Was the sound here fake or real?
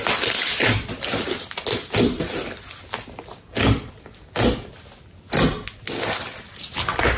real